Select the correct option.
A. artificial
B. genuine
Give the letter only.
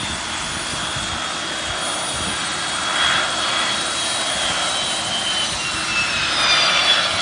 B